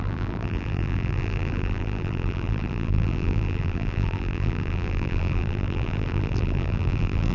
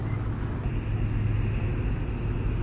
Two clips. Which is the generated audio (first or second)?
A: first